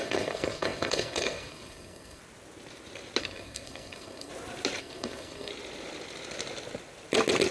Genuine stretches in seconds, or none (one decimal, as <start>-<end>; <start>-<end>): 2.2-3.2; 4.3-4.8; 5.5-7.5